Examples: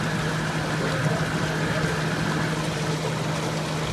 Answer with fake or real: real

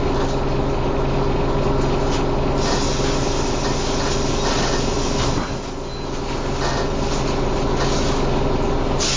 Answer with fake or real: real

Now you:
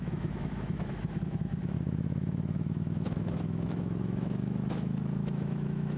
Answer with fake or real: fake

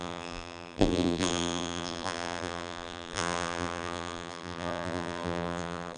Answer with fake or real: fake